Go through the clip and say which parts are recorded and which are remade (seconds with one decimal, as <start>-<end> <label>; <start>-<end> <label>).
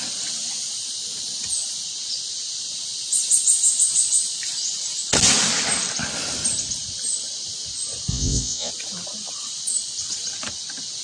0.0-8.1 recorded; 8.1-8.7 remade; 8.7-11.0 recorded